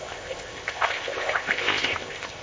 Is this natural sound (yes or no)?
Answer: no